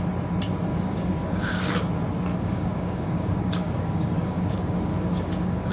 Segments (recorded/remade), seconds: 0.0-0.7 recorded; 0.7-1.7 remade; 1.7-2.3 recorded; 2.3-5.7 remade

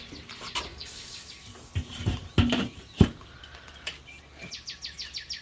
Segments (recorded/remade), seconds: 0.0-0.7 recorded; 0.7-1.7 remade; 1.7-5.4 recorded

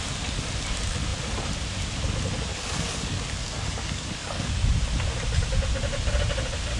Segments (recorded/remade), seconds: 0.0-2.5 recorded; 2.5-4.5 remade; 4.5-6.8 recorded